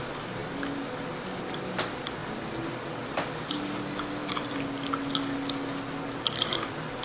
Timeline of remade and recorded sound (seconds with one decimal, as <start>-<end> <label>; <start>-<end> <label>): 0.0-0.4 remade; 0.4-1.5 recorded; 1.5-4.2 remade; 4.2-6.2 recorded; 6.2-7.0 remade